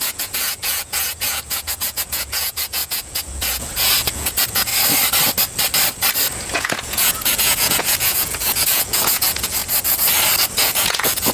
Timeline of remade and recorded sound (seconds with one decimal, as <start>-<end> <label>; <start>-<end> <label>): 0.0-4.7 remade; 4.7-6.5 recorded; 6.5-9.6 remade; 9.6-10.6 recorded; 10.6-11.3 remade